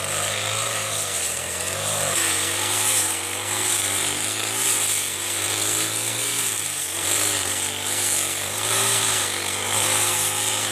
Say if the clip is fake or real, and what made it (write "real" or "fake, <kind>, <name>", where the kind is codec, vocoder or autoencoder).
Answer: fake, codec, SNAC